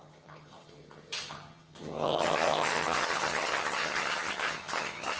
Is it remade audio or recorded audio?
remade